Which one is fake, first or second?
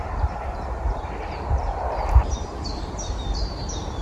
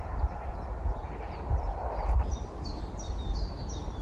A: first